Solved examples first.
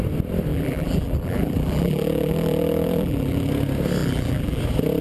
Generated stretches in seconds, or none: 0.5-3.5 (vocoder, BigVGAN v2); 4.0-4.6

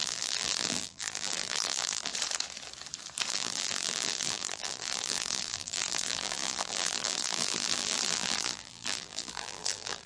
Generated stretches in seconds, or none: 0.0-2.1 (vocoder, BigVGAN v2); 3.3-10.1

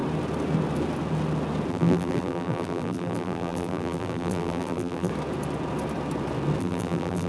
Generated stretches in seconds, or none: 1.7-5.1 (vocoder, BigVGAN v2); 6.6-7.3

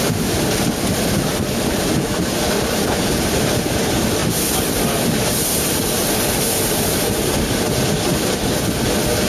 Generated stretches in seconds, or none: 1.3-3.8 (vocoder, BigVGAN v2); 4.2-8.6